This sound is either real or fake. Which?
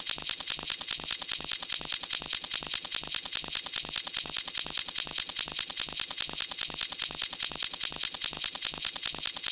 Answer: real